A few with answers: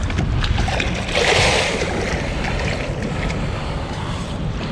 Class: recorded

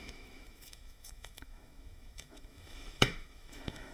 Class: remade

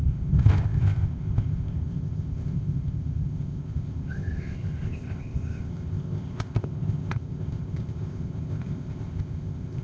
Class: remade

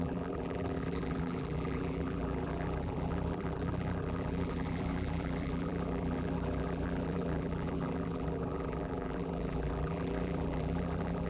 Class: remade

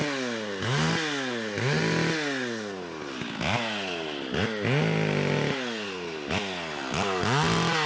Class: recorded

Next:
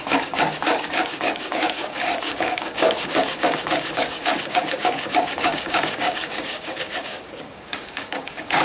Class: remade